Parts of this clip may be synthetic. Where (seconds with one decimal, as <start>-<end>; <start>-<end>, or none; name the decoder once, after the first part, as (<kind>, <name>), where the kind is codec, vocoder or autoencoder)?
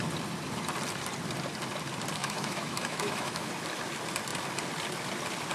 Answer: 2.2-3.5 (autoencoder, DAC-VAE)